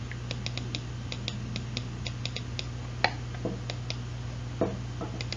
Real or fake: real